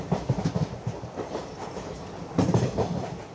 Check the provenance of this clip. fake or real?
real